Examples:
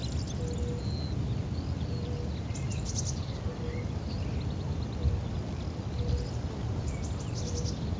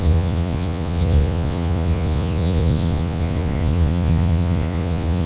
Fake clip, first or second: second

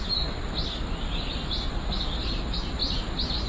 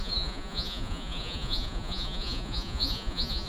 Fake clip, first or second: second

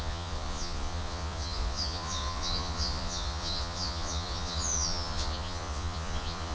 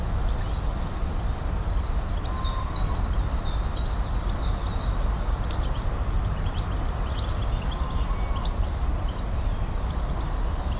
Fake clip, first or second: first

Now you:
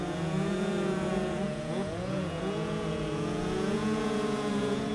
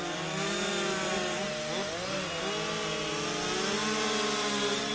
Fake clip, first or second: first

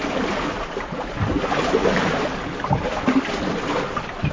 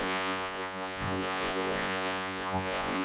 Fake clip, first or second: second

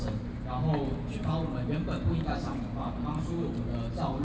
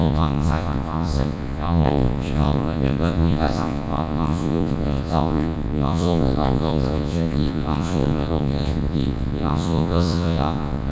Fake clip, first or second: second